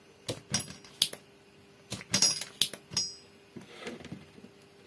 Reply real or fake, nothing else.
real